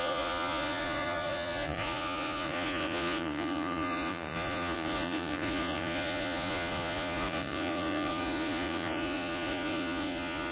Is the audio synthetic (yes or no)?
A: yes